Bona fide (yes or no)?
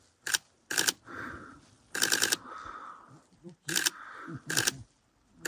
yes